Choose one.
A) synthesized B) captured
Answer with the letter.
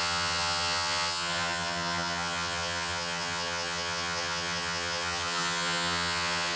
A